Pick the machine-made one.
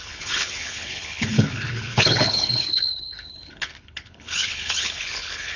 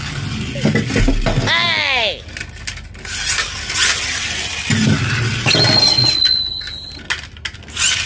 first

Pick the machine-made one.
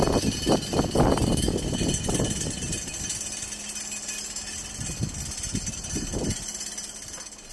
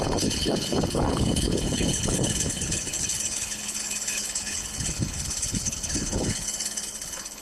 second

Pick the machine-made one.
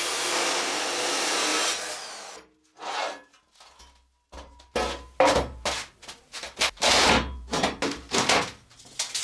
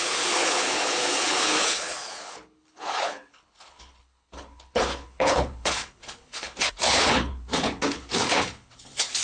second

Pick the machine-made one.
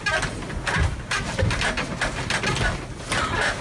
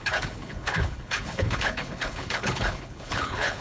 second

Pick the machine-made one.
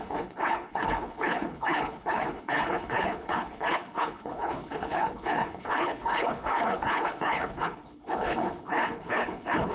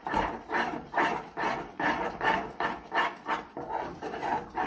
first